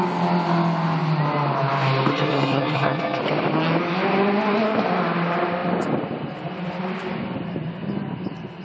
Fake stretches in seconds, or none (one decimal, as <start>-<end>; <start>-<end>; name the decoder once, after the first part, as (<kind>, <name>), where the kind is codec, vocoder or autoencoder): 2.1-3.2 (codec, SNAC)